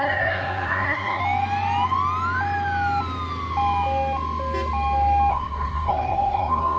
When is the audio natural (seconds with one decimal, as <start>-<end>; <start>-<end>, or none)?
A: 1.2-5.3